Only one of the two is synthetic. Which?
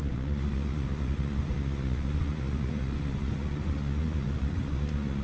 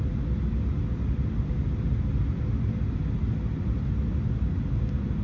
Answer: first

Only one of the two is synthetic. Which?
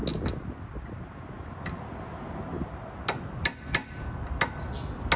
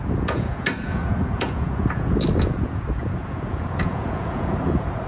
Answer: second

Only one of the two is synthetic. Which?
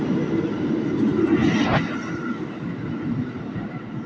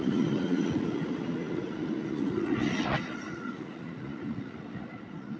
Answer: second